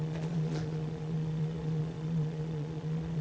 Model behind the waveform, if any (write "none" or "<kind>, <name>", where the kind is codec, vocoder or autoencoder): vocoder, Vocos